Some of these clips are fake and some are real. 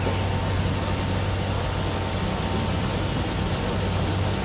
real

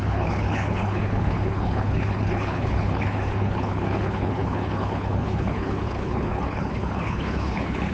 fake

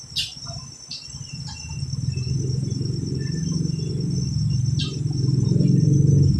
real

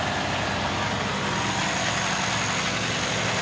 real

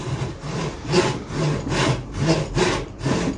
real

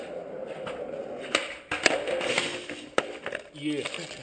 real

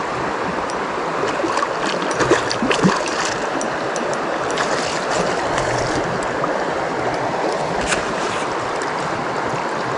real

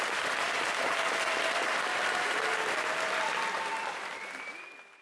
real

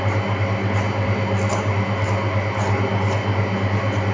real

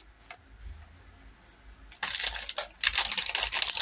real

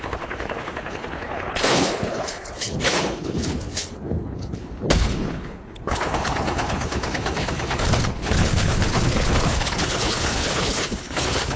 fake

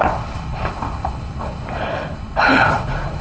fake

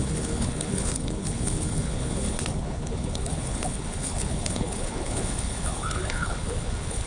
fake